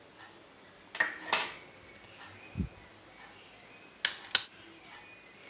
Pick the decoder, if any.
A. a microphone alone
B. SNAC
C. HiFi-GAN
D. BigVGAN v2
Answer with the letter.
A